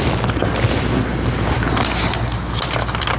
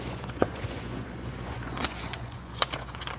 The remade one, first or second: second